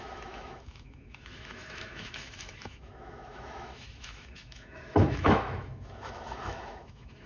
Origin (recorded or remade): remade